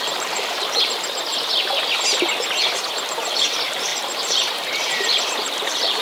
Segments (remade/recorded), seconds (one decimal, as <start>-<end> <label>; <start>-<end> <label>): 0.0-1.3 remade; 1.3-3.1 recorded; 3.1-6.0 remade